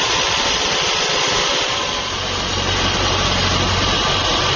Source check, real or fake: real